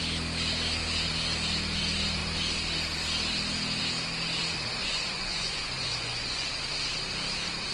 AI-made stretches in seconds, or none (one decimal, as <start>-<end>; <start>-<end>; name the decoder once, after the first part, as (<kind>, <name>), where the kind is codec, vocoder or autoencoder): 4.8-6.5 (vocoder, Vocos)